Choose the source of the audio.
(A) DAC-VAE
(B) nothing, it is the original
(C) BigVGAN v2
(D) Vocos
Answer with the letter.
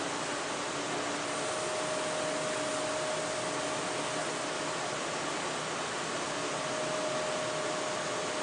B